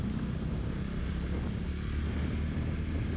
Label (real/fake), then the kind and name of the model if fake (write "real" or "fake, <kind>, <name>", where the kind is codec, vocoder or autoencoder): real